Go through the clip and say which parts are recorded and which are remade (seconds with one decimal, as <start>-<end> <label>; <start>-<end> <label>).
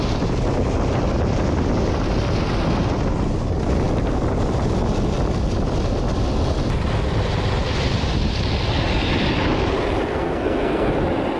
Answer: 0.0-10.1 recorded; 10.1-10.9 remade; 10.9-11.4 recorded